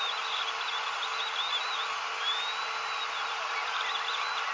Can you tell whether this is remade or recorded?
recorded